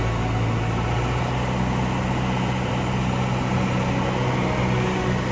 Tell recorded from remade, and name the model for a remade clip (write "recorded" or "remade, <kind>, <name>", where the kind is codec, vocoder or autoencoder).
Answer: recorded